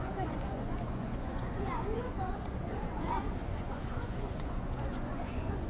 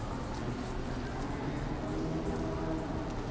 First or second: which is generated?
first